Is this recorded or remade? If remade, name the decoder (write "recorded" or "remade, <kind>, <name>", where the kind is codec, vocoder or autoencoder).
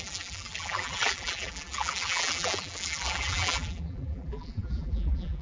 remade, vocoder, BigVGAN v2